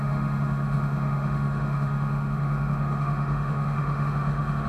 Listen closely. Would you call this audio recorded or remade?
remade